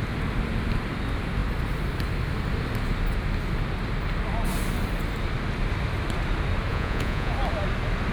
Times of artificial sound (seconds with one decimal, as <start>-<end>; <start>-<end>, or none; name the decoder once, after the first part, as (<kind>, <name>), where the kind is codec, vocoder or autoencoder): 6.7-7.3 (vocoder, Vocos)